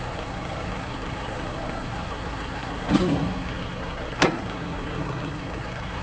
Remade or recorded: remade